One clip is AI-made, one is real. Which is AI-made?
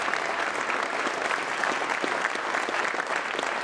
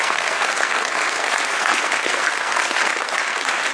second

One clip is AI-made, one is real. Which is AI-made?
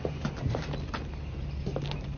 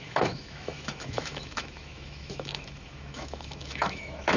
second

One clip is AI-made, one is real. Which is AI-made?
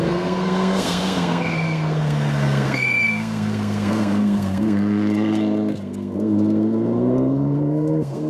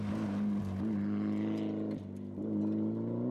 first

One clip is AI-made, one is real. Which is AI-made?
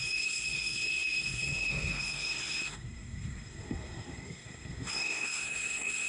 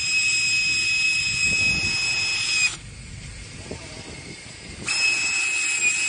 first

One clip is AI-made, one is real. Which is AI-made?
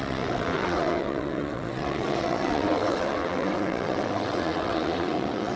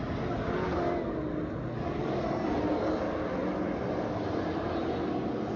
first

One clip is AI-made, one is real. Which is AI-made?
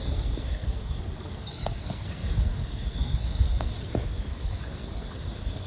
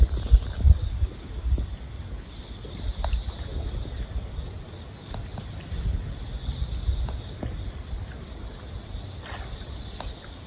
first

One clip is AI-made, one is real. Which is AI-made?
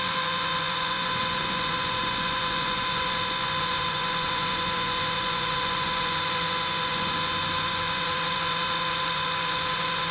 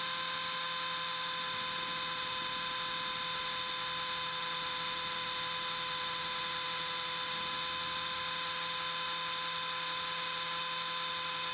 first